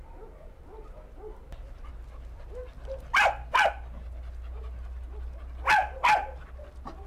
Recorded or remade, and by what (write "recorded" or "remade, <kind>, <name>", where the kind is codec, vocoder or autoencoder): recorded